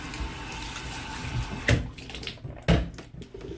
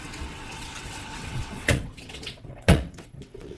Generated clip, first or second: second